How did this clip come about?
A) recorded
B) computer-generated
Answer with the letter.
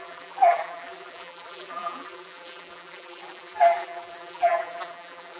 B